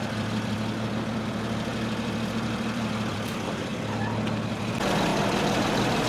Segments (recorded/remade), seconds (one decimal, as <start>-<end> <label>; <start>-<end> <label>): 0.0-3.7 remade; 3.7-4.5 recorded; 4.5-5.1 remade; 5.1-6.1 recorded